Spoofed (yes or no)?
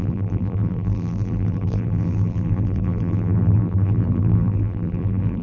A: yes